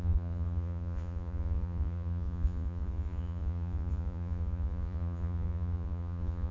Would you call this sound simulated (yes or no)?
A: yes